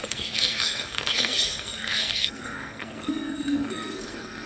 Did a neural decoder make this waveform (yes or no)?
yes